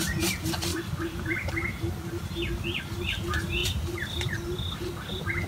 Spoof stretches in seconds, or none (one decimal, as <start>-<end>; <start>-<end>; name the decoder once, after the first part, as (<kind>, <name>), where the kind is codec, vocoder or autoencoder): 0.7-2.3 (vocoder, BigVGAN v2)